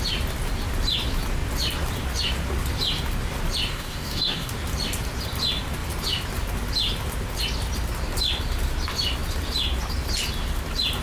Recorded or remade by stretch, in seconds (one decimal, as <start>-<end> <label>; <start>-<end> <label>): 0.0-3.7 recorded; 3.7-4.5 remade; 4.5-11.0 recorded